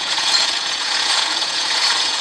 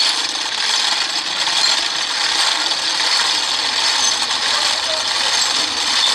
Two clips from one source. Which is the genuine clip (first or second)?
second